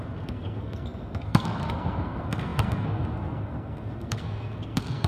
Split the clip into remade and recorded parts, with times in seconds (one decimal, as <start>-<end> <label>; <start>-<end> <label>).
0.0-5.1 remade